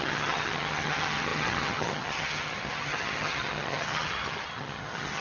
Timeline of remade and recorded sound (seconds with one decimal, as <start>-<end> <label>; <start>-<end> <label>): 0.0-5.2 remade

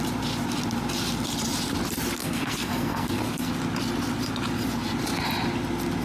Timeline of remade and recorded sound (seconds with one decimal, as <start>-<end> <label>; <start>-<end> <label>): 0.0-2.2 recorded; 2.2-3.5 remade; 3.5-6.0 recorded

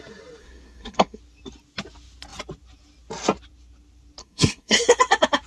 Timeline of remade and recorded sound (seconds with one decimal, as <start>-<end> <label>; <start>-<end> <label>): 0.0-0.4 recorded; 0.4-1.2 remade; 1.2-4.2 recorded; 4.2-4.8 remade; 4.8-5.5 recorded

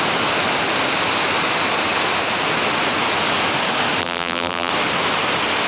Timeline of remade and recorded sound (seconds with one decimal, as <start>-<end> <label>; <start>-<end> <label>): 0.0-4.0 recorded; 4.0-4.7 remade; 4.7-5.7 recorded

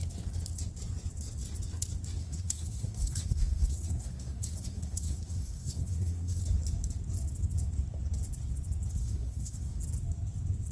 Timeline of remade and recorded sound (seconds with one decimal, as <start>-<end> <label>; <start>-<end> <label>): 0.0-2.2 recorded; 2.2-6.4 remade; 6.4-9.0 recorded; 9.0-9.8 remade; 9.8-10.7 recorded

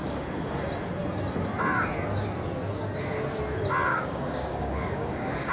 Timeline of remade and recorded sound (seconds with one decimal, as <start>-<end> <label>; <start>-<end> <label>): 0.0-0.5 remade; 0.5-3.9 recorded; 3.9-5.5 remade

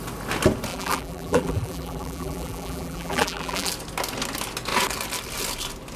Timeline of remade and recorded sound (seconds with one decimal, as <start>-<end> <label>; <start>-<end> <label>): 0.0-0.7 recorded; 0.7-3.7 remade; 3.7-6.0 recorded